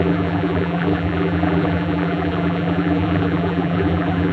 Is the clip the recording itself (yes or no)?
no